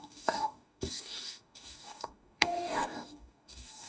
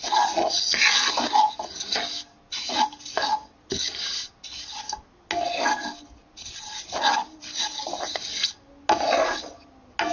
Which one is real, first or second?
second